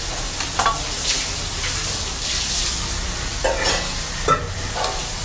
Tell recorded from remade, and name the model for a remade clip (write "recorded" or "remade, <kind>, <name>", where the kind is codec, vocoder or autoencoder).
recorded